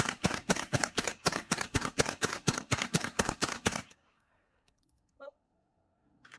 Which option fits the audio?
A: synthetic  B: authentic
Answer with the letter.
A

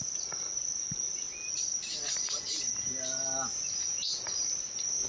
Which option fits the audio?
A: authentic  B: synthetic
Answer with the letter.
A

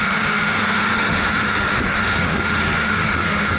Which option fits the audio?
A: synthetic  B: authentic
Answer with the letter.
A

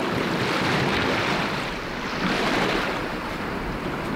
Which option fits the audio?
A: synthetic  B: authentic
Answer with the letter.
B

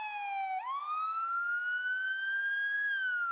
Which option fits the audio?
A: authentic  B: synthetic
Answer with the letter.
A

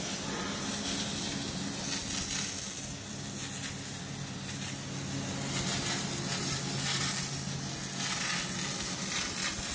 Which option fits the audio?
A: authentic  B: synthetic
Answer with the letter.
A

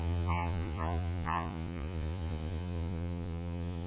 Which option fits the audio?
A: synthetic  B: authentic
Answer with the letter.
A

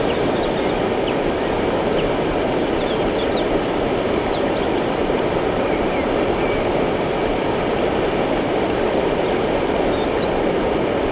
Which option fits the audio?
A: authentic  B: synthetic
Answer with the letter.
A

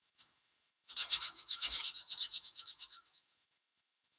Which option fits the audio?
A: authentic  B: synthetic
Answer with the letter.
B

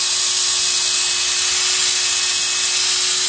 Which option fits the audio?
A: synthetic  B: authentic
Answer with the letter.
B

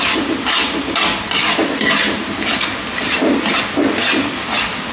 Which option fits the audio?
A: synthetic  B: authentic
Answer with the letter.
B